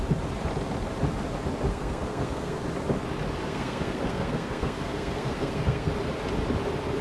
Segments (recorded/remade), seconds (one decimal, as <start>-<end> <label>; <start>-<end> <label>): 0.0-1.7 recorded; 1.7-2.6 remade; 2.6-3.4 recorded; 3.4-5.9 remade; 5.9-7.0 recorded